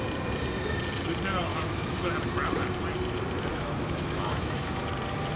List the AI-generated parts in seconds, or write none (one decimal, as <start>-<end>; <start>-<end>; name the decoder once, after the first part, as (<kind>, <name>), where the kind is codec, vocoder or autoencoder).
1.5-2.1 (autoencoder, DAC-VAE); 3.5-4.8